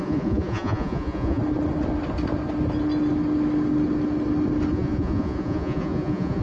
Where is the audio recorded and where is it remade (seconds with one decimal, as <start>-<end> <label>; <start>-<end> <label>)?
0.0-1.4 remade; 1.4-4.7 recorded; 4.7-6.4 remade